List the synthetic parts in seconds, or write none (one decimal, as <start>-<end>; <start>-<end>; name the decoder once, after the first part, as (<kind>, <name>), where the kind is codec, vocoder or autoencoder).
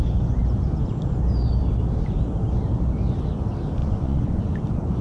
3.8-4.4 (vocoder, Vocos)